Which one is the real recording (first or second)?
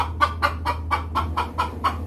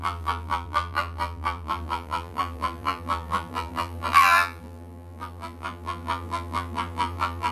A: first